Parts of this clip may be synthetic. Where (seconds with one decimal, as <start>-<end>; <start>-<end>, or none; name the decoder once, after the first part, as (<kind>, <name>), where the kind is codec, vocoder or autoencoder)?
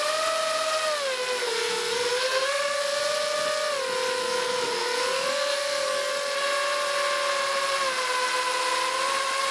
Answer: 1.4-2.8 (codec, SNAC); 4.2-6.1